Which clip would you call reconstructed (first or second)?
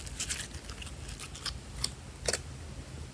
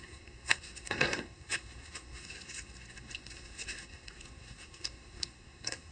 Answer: second